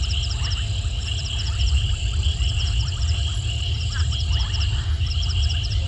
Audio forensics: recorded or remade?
remade